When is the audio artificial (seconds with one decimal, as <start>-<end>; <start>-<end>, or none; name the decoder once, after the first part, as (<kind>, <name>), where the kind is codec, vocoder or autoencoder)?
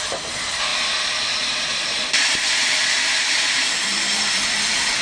0.0-5.0 (vocoder, BigVGAN v2)